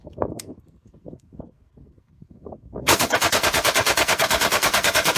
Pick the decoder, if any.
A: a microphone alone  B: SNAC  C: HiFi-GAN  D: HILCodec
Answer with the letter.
B